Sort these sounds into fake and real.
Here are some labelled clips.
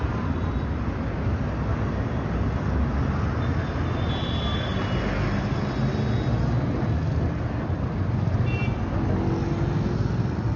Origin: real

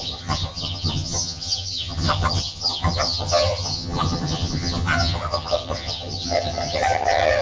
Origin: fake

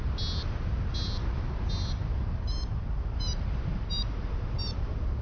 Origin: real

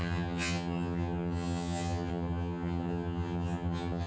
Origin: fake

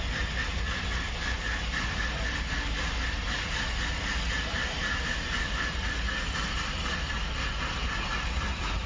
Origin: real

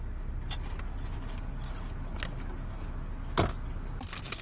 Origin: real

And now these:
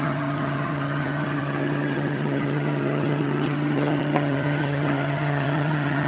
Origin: fake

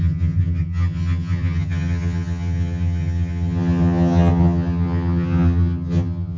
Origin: fake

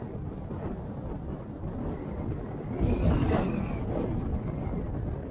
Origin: real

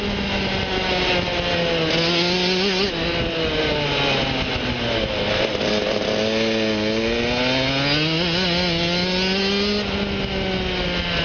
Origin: real